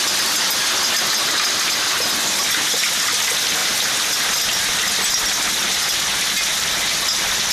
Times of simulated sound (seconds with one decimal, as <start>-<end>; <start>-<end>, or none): 3.6-4.3; 6.5-7.5